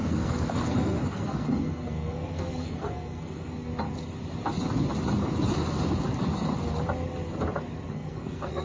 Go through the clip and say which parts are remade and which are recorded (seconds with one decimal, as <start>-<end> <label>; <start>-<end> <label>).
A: 0.0-3.7 remade; 3.7-7.9 recorded; 7.9-8.6 remade